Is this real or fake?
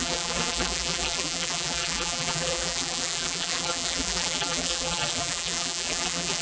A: fake